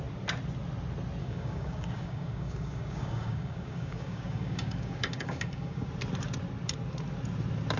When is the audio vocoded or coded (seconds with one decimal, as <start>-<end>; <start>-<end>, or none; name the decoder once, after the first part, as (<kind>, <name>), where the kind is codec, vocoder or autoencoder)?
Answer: 1.2-5.9 (codec, DAC)